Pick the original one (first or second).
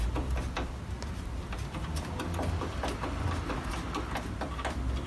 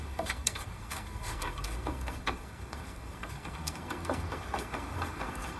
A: first